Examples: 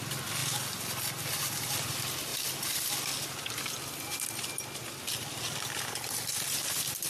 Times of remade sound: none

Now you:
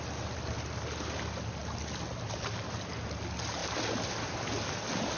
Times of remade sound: none

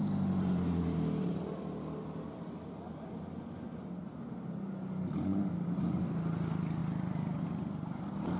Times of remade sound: none

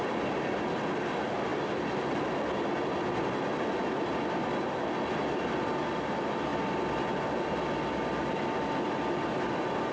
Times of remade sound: none

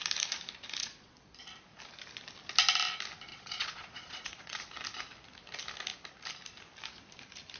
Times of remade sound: 0.8-1.4 (vocoder, Vocos); 3.3-4.6

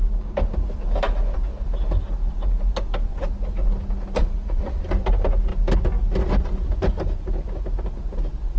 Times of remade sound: 4.2-4.8 (vocoder, Vocos)

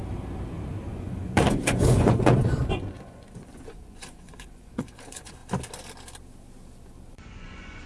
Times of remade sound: 0.9-5.4 (vocoder, Vocos); 7.1-7.9